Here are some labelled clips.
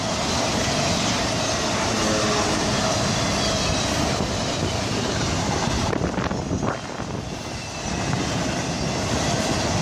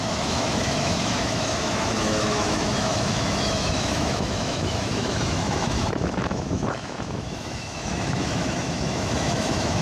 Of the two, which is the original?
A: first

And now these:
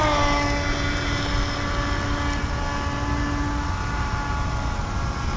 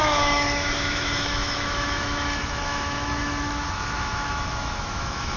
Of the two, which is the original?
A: first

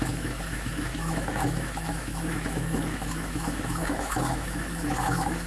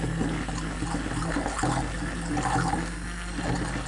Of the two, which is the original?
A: second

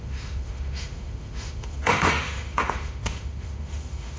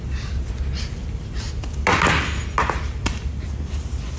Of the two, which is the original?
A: second